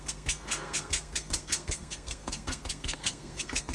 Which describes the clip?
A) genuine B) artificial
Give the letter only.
B